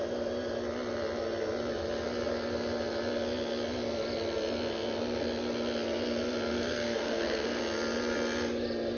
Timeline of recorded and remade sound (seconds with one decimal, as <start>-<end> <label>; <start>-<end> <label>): 0.0-6.5 recorded; 6.5-7.6 remade; 7.6-9.0 recorded